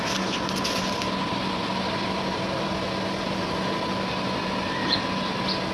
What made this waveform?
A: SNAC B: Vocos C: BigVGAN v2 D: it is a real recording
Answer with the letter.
D